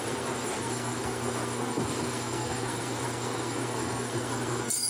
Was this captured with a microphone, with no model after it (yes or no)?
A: no